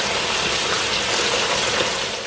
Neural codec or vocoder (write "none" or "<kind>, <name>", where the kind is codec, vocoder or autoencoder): none